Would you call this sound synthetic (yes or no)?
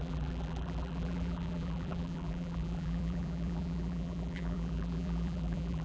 yes